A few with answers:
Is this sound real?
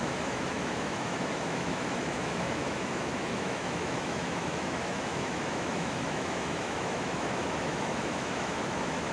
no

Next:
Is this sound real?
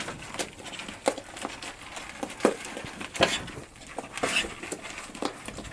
yes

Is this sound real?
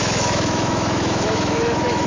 no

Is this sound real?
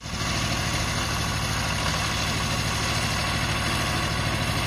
yes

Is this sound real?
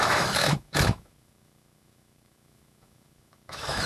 no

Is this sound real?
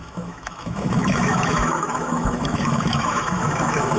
no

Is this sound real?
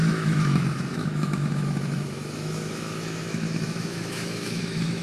no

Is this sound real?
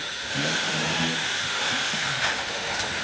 no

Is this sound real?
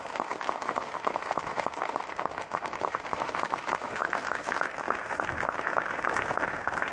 no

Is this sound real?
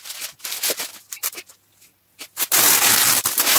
yes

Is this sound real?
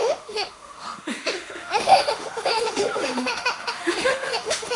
no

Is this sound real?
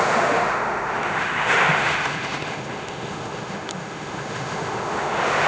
no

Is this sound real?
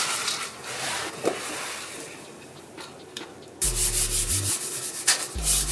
yes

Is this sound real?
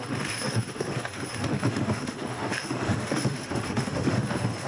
no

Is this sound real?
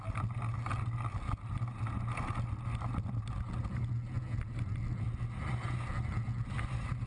yes